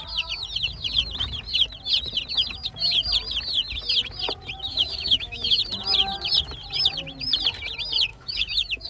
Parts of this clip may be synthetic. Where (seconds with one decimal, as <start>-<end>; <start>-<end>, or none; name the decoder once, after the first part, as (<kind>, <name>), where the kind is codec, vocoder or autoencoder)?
4.7-5.6 (autoencoder, DAC-VAE); 8.1-8.9